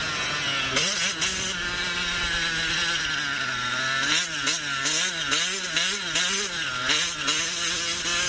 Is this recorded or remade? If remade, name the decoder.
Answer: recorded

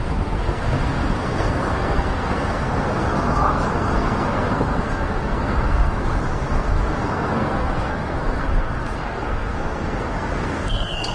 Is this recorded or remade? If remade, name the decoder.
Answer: remade, codec, SNAC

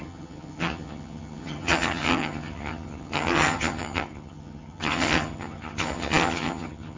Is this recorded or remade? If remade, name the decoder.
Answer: remade, vocoder, HiFi-GAN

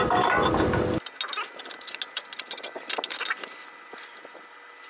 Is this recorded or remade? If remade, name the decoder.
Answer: recorded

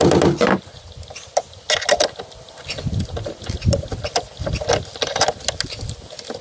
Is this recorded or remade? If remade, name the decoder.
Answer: recorded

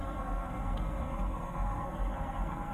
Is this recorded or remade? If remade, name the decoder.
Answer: remade, codec, SNAC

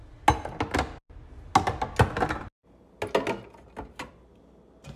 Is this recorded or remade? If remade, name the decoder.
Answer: recorded